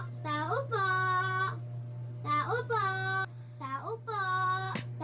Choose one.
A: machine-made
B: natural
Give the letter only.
B